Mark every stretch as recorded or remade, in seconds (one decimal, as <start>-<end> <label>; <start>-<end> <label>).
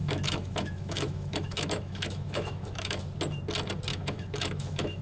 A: 0.0-3.0 remade; 3.0-3.9 recorded; 3.9-5.0 remade